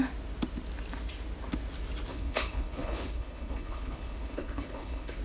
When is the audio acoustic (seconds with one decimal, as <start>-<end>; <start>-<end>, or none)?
0.0-2.1